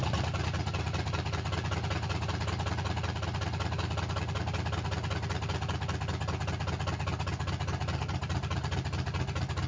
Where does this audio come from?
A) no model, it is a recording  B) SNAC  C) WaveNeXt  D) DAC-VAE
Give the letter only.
A